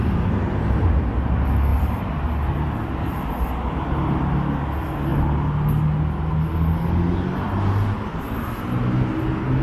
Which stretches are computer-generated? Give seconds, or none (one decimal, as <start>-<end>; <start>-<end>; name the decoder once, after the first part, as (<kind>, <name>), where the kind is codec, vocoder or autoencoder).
1.7-3.3 (vocoder, BigVGAN v2)